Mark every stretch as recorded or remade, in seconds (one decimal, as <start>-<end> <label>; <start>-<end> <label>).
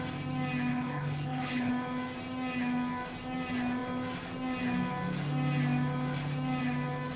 0.0-0.7 recorded; 0.7-1.7 remade; 1.7-7.2 recorded